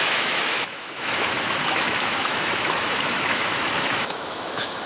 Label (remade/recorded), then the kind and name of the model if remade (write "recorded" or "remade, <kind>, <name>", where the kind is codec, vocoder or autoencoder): remade, autoencoder, DAC-VAE